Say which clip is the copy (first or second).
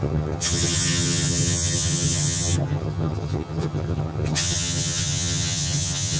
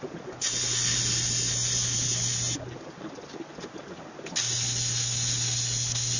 first